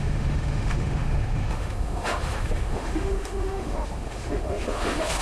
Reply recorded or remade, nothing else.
remade